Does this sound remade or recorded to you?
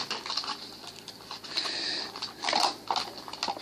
recorded